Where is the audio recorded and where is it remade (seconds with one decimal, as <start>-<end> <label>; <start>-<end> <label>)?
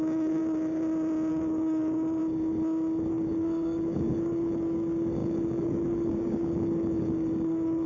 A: 0.0-0.4 remade; 0.4-1.3 recorded; 1.3-2.2 remade; 2.2-3.1 recorded; 3.1-7.9 remade